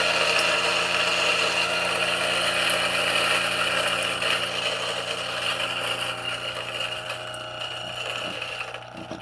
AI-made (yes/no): no